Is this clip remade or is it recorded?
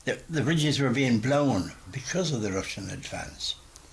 recorded